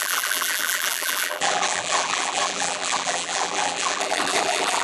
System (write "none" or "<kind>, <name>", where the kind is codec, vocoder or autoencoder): vocoder, BigVGAN v2